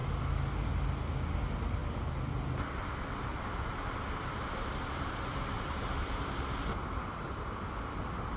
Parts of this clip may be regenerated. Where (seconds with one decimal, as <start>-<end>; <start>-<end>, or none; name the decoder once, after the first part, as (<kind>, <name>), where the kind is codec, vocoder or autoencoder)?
3.3-6.2 (vocoder, BigVGAN v2)